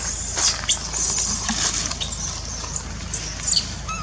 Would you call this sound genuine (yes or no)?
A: yes